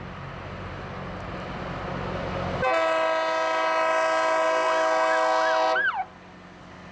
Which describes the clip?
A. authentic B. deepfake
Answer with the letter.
A